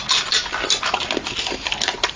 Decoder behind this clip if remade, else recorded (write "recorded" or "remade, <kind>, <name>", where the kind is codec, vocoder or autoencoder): recorded